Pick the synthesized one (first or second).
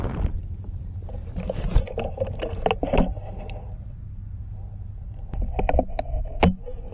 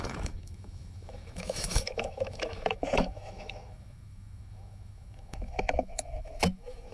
second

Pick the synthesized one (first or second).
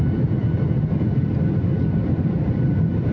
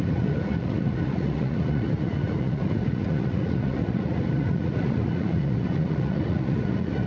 second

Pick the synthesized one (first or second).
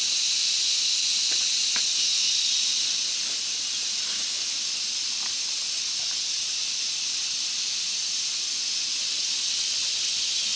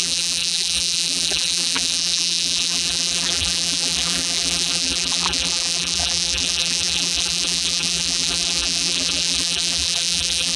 second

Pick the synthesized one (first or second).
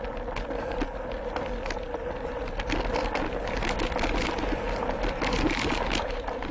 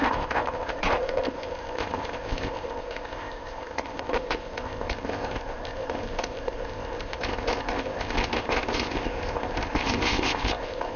second